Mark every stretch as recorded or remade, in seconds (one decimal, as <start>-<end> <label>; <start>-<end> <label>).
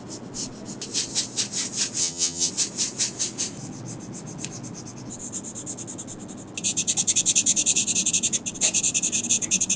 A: 0.0-2.0 recorded; 2.0-2.5 remade; 2.5-9.8 recorded